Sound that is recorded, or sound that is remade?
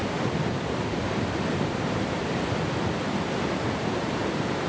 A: remade